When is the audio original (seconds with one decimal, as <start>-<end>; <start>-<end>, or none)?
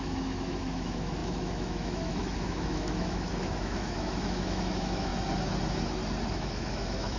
5.1-6.3